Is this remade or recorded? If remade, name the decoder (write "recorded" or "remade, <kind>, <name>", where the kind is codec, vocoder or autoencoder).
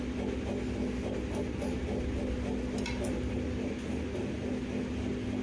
recorded